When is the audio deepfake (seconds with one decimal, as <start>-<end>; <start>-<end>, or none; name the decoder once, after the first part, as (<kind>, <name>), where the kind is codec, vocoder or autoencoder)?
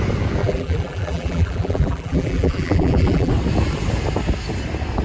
0.4-3.3 (vocoder, BigVGAN v2)